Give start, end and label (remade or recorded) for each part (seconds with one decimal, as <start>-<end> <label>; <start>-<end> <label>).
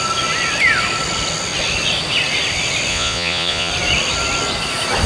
0.0-2.9 recorded; 2.9-3.7 remade; 3.7-5.1 recorded